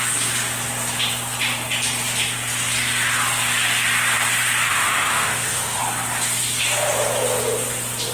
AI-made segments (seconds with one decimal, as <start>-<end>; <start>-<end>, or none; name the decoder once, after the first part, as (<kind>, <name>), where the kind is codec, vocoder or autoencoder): 4.7-5.8 (autoencoder, DAC-VAE)